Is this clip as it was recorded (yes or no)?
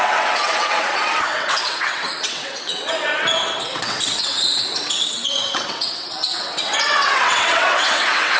no